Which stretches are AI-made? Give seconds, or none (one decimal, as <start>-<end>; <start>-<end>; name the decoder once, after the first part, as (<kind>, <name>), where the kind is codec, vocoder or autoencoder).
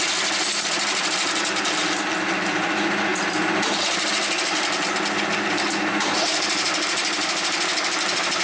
none